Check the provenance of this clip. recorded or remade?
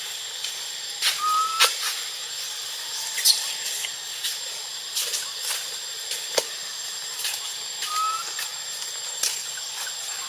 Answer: recorded